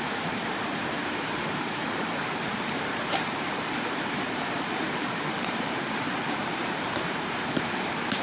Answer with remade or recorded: remade